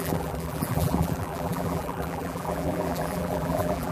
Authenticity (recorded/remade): remade